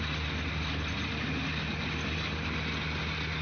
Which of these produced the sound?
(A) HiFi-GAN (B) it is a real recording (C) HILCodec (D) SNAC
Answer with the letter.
B